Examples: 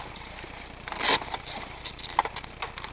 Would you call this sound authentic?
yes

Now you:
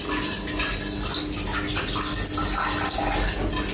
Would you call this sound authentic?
yes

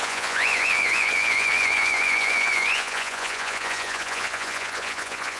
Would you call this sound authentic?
no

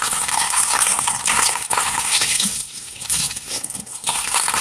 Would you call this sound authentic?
no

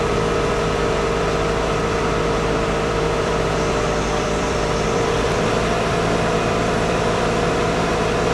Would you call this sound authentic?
no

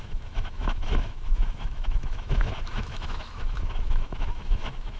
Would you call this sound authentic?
no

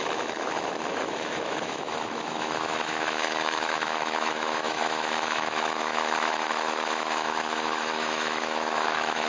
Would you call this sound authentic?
no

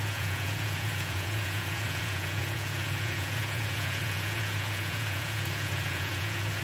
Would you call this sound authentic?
no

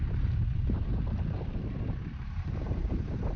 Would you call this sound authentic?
yes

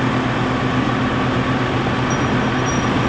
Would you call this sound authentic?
yes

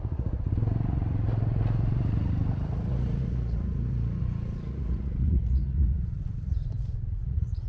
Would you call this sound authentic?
no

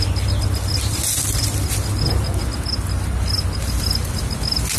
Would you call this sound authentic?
yes